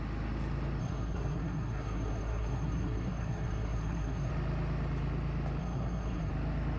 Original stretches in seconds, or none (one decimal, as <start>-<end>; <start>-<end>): 0.0-0.8; 4.3-5.6; 6.3-6.8